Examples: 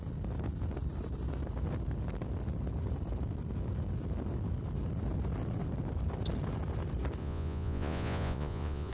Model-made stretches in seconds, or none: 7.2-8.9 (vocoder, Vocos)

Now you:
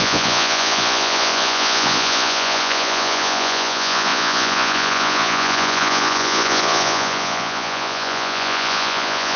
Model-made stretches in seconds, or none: 0.0-9.4 (vocoder, Vocos)

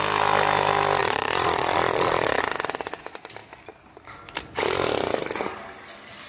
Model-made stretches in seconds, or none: 1.0-2.4 (vocoder, Vocos)

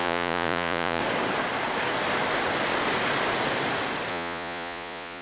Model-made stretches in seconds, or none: 0.0-1.0 (vocoder, Vocos); 4.1-5.2